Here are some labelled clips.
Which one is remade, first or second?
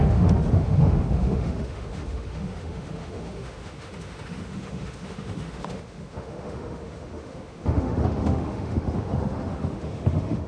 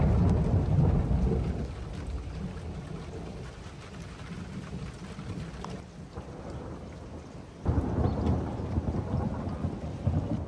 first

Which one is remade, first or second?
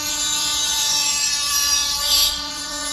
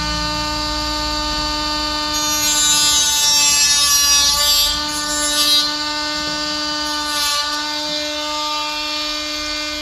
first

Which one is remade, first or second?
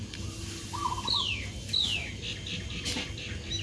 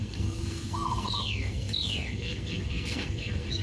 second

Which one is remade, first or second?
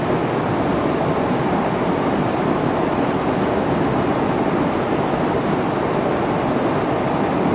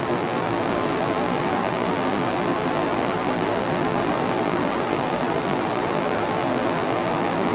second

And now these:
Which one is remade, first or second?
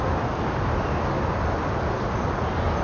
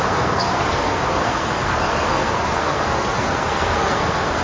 second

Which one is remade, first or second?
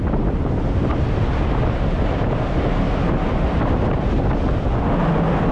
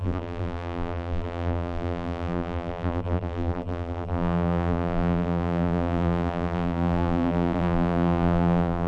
second